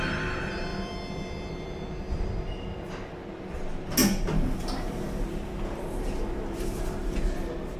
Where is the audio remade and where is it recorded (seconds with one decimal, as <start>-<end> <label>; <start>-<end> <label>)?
0.0-0.7 recorded; 0.7-3.4 remade; 3.4-7.8 recorded